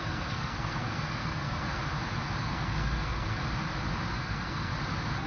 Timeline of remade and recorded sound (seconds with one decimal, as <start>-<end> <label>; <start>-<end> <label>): 0.0-1.8 remade; 1.8-2.4 recorded; 2.4-3.4 remade; 3.4-4.1 recorded; 4.1-4.7 remade; 4.7-5.3 recorded